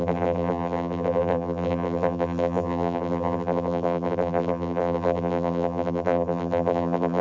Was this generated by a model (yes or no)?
yes